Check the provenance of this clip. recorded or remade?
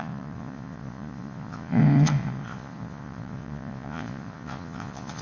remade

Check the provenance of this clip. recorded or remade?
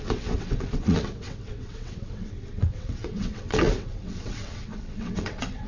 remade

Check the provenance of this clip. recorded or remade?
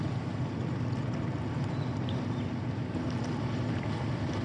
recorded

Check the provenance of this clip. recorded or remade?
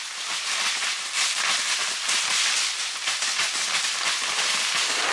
recorded